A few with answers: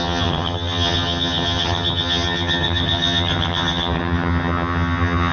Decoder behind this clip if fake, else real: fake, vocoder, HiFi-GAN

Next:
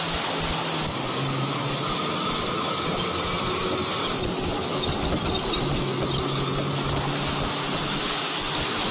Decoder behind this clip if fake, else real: real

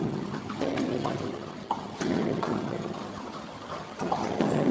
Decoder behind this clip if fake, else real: fake, vocoder, HiFi-GAN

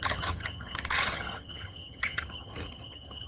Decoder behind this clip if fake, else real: fake, vocoder, HiFi-GAN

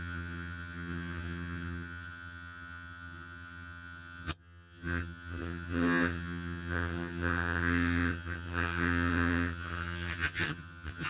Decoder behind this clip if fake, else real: fake, vocoder, HiFi-GAN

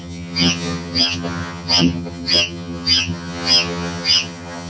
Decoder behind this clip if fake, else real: fake, vocoder, HiFi-GAN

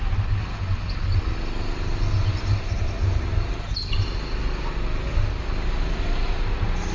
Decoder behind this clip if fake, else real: real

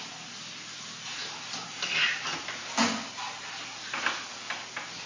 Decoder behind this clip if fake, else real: real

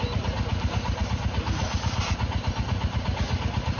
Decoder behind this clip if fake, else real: real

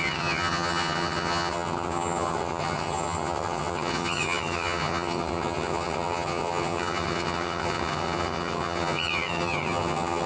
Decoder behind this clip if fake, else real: fake, vocoder, HiFi-GAN